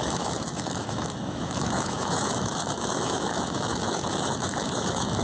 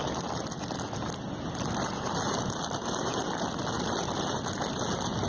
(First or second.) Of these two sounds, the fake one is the first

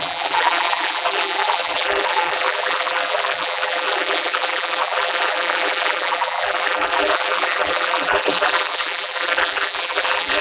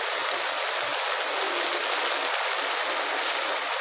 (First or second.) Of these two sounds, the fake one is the first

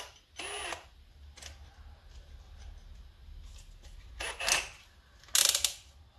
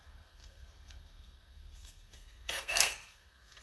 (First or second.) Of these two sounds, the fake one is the second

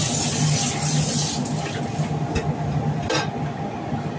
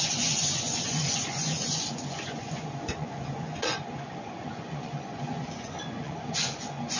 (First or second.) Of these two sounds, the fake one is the second